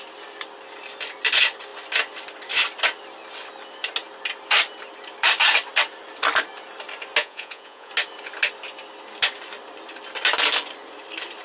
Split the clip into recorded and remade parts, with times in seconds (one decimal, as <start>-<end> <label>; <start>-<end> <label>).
0.0-7.2 recorded; 7.2-7.9 remade; 7.9-11.4 recorded

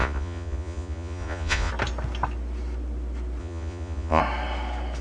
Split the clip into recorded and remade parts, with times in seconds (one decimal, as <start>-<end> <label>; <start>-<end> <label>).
0.0-1.7 remade; 1.7-3.4 recorded; 3.4-4.2 remade; 4.2-5.0 recorded

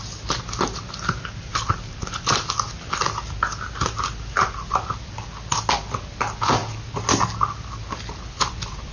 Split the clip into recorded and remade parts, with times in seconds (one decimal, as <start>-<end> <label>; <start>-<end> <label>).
0.0-8.9 recorded